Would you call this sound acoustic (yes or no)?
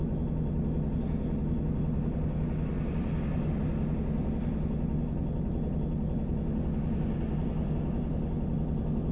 yes